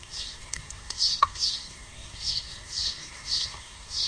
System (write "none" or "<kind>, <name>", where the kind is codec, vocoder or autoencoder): codec, SNAC